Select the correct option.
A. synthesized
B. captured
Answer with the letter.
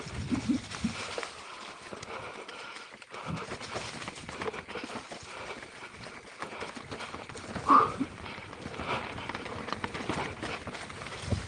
B